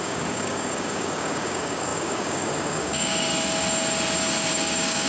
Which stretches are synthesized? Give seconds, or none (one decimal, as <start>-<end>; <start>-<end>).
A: 0.0-3.3; 4.5-5.1